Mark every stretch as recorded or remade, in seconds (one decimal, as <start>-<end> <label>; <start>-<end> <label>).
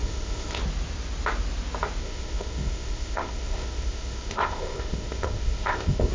0.0-0.6 remade; 0.6-2.0 recorded; 2.0-6.1 remade